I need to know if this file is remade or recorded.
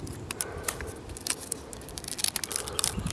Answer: recorded